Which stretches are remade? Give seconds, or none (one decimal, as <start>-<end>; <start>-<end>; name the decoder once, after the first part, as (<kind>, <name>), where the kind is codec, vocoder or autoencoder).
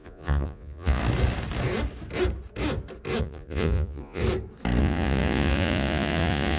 0.0-1.0 (vocoder, Vocos); 3.2-4.2; 4.8-6.6